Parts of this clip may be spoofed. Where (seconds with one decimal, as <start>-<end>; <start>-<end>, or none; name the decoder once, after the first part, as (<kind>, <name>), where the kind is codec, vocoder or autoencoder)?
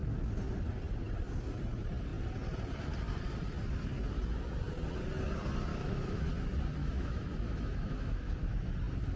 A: 5.7-6.3 (autoencoder, DAC-VAE); 6.8-8.7